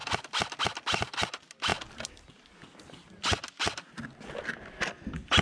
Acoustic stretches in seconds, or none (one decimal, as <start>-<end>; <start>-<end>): 0.0-5.4